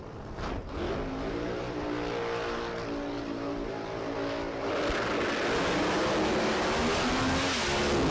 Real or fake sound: real